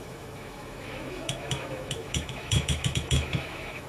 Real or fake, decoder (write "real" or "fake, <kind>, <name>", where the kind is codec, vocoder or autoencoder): fake, autoencoder, DAC-VAE